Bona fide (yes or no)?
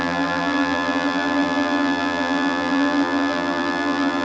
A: no